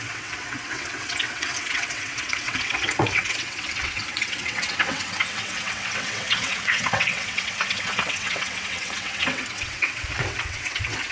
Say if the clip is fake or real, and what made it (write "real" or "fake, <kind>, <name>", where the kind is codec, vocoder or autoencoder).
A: fake, vocoder, WaveNeXt